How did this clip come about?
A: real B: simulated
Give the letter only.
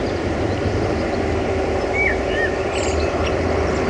B